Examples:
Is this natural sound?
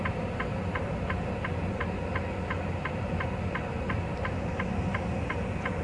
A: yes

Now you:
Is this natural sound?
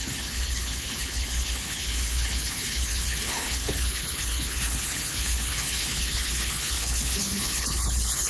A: no